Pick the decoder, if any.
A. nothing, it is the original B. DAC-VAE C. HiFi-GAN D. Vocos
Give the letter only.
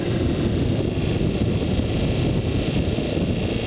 A